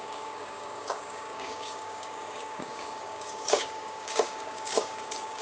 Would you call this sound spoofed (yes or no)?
yes